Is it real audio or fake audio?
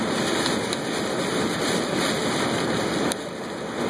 real